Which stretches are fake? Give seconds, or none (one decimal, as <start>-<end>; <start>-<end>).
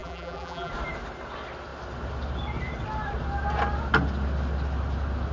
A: 0.0-0.7